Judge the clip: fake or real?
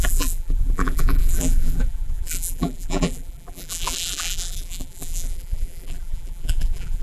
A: fake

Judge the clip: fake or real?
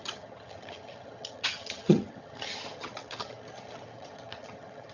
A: fake